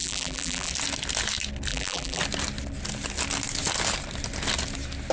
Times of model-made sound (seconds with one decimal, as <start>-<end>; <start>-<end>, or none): 0.0-0.7; 1.7-2.2